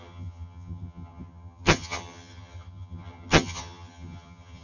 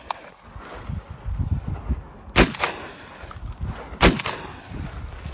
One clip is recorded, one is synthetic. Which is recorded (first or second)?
second